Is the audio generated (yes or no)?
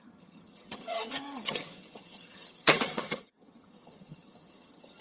yes